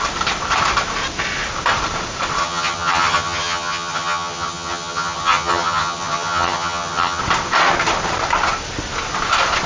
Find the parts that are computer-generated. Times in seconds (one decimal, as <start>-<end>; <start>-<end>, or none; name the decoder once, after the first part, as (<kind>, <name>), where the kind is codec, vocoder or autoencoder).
2.4-7.2 (vocoder, HiFi-GAN)